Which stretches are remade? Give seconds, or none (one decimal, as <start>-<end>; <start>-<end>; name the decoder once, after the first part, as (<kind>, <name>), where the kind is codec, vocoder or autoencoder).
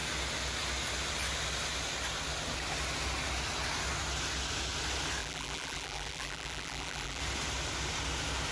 5.2-7.2 (vocoder, BigVGAN v2)